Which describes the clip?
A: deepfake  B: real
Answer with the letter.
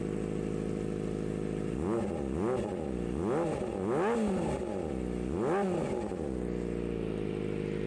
B